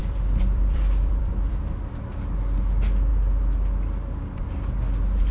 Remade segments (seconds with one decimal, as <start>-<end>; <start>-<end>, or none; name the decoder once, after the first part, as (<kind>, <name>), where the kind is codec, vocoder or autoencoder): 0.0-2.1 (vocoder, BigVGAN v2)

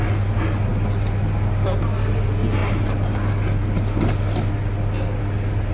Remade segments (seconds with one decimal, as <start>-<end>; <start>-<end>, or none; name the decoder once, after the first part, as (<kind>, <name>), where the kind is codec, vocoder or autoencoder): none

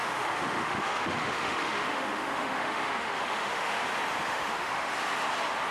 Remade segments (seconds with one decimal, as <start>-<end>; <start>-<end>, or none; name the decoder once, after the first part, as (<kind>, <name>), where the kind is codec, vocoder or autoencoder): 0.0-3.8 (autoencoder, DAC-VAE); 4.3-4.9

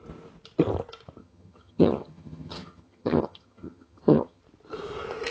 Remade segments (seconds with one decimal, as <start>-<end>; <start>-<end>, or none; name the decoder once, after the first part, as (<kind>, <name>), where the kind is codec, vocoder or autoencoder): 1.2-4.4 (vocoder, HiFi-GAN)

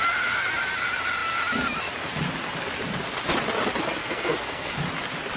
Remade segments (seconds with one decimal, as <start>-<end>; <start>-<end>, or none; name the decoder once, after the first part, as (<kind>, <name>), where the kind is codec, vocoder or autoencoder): 4.0-4.8 (codec, SNAC)

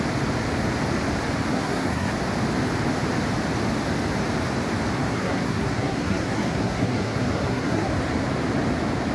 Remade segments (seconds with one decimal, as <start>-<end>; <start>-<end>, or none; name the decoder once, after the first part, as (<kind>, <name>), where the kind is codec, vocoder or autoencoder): 1.5-2.1 (codec, SNAC); 5.0-7.9